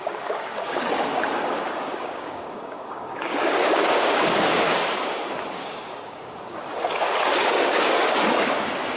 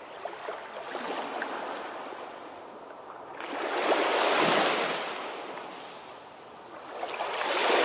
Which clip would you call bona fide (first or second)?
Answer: second